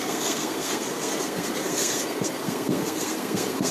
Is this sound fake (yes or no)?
yes